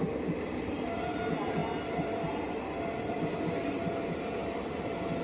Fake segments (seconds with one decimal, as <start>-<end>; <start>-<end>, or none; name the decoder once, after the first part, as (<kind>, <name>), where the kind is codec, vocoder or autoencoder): none